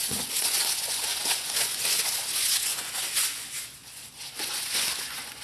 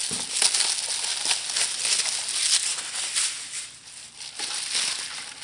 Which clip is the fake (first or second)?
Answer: first